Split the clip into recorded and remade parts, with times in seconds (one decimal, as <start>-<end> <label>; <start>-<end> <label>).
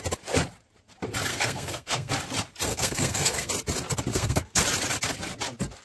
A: 0.0-1.3 recorded; 1.3-2.1 remade; 2.1-2.7 recorded; 2.7-3.5 remade; 3.5-4.1 recorded; 4.1-4.6 remade; 4.6-5.8 recorded